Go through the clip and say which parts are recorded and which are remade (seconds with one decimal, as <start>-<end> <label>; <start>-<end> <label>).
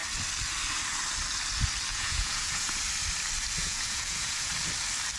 0.0-1.9 recorded; 1.9-2.8 remade; 2.8-3.6 recorded; 3.6-4.5 remade; 4.5-5.2 recorded